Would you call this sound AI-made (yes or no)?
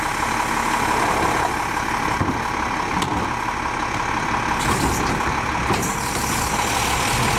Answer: no